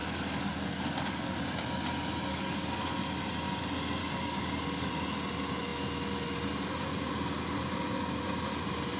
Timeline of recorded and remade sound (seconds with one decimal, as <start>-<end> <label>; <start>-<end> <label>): 0.0-1.4 remade; 1.4-2.3 recorded; 2.3-2.8 remade; 2.8-4.0 recorded; 4.0-4.9 remade; 4.9-9.0 recorded